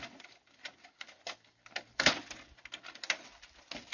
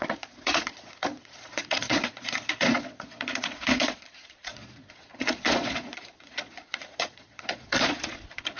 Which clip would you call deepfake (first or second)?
second